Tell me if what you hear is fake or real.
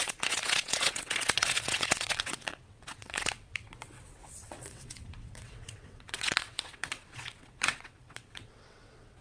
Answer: fake